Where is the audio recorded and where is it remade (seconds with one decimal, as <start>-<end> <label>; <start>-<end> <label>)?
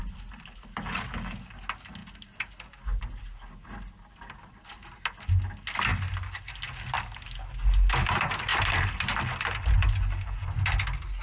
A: 0.0-11.2 recorded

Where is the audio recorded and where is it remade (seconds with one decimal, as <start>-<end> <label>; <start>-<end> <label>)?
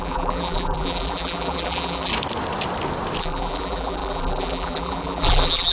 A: 0.0-2.1 remade; 2.1-3.2 recorded; 3.2-5.7 remade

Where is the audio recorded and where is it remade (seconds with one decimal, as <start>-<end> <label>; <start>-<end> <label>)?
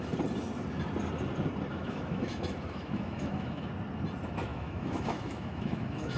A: 0.0-1.7 recorded; 1.7-3.7 remade; 3.7-4.5 recorded; 4.5-6.2 remade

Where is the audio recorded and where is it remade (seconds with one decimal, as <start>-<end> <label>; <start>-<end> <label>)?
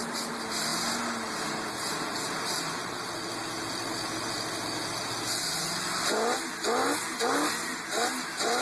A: 0.0-8.6 recorded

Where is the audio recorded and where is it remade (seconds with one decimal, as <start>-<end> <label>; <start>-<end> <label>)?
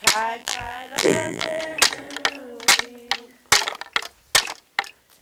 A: 0.0-0.4 recorded; 0.4-1.6 remade; 1.6-5.2 recorded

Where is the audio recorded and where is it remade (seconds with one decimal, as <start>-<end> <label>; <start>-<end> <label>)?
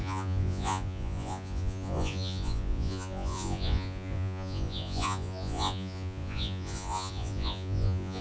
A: 0.0-8.2 remade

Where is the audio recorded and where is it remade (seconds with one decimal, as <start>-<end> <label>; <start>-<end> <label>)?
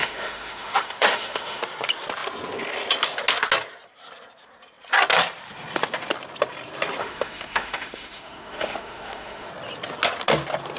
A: 0.0-1.6 remade; 1.6-7.0 recorded; 7.0-9.5 remade; 9.5-10.8 recorded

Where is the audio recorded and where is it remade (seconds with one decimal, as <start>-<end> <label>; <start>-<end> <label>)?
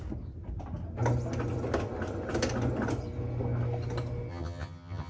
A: 0.0-4.3 recorded; 4.3-5.1 remade